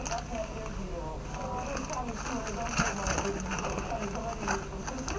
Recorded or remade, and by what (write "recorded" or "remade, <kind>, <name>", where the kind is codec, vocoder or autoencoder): recorded